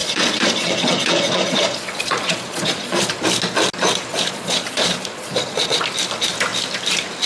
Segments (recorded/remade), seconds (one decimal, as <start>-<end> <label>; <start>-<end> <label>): 0.0-3.1 remade; 3.1-4.1 recorded; 4.1-5.8 remade; 5.8-7.3 recorded